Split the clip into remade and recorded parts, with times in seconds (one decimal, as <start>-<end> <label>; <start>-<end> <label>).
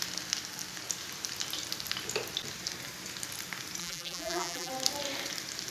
0.0-3.8 recorded; 3.8-4.7 remade; 4.7-5.7 recorded